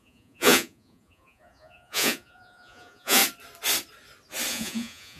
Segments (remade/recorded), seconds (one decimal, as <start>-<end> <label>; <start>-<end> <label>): 0.0-3.2 remade; 3.2-4.5 recorded; 4.5-5.2 remade